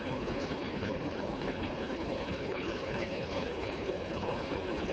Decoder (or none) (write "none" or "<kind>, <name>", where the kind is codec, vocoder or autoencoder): codec, HILCodec